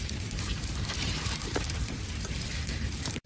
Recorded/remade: remade